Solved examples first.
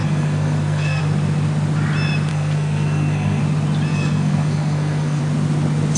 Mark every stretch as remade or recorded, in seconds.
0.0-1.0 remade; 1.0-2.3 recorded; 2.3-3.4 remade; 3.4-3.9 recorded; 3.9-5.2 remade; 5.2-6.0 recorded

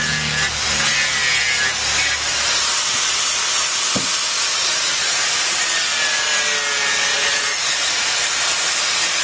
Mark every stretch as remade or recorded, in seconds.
0.0-7.1 recorded; 7.1-8.0 remade; 8.0-9.2 recorded

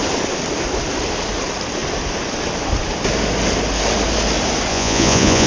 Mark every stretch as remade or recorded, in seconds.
0.0-4.7 recorded; 4.7-5.5 remade

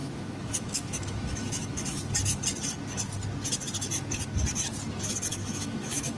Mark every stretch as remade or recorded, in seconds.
0.0-2.0 remade; 2.0-5.3 recorded; 5.3-6.2 remade

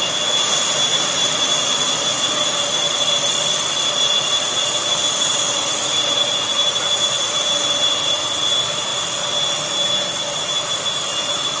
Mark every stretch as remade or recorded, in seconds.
0.0-11.6 recorded

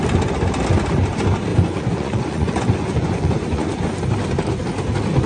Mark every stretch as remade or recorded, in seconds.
0.0-1.5 recorded; 1.5-3.8 remade; 3.8-5.3 recorded

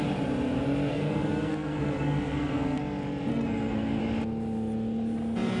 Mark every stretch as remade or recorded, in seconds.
0.0-0.9 recorded; 0.9-2.8 remade; 2.8-3.3 recorded; 3.3-4.0 remade; 4.0-5.6 recorded